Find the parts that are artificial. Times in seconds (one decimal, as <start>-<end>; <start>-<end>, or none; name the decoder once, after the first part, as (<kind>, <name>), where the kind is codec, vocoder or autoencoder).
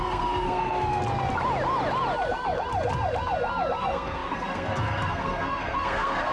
0.0-1.0 (codec, SNAC); 3.8-6.3